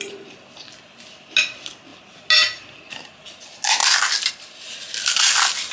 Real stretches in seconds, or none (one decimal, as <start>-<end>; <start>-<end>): 0.0-5.7